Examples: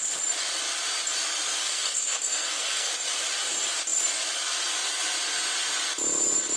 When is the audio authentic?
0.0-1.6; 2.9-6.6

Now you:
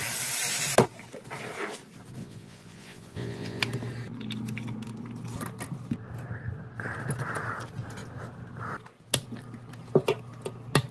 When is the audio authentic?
0.0-2.2; 3.6-10.9

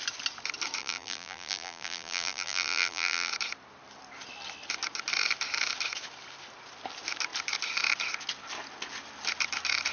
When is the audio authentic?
0.0-0.8; 3.3-9.9

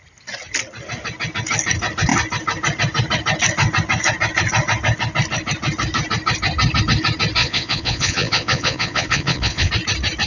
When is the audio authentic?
0.0-7.4; 9.7-10.3

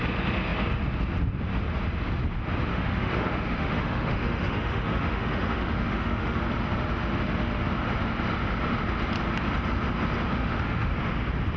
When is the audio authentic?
0.0-2.7; 6.4-10.3; 10.9-11.6

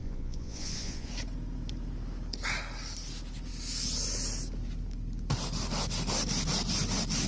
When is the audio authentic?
1.1-7.3

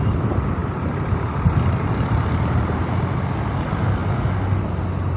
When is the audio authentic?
0.0-5.2